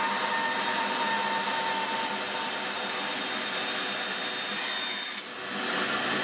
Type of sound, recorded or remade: recorded